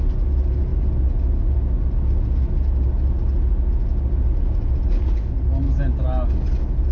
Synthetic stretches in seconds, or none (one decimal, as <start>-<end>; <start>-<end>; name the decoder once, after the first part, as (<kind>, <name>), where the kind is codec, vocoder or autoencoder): none